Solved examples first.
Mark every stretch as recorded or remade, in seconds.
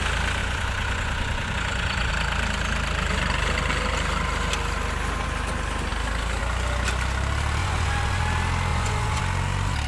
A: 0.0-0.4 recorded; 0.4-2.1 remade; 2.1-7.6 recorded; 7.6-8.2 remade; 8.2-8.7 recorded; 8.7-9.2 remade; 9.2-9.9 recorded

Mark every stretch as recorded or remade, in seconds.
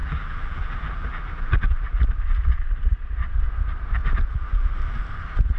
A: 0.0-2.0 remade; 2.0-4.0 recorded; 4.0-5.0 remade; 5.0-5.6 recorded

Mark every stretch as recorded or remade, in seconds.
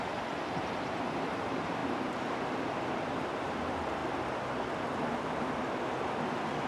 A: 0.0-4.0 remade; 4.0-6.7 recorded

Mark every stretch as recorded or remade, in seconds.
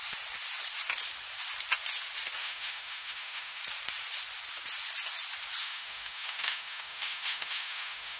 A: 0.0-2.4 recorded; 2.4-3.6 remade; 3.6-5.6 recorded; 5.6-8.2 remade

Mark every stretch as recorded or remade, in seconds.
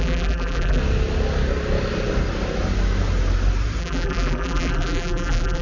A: 0.0-0.8 remade; 0.8-3.8 recorded; 3.8-5.6 remade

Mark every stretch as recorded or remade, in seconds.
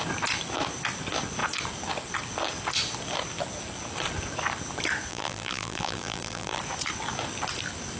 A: 0.0-5.1 recorded; 5.1-6.6 remade; 6.6-8.0 recorded